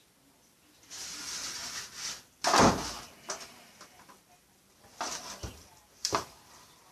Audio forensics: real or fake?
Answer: real